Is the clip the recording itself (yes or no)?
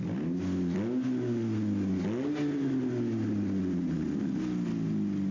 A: yes